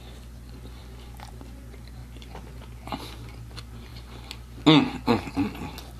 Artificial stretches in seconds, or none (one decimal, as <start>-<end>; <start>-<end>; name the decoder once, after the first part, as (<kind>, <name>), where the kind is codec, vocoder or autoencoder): none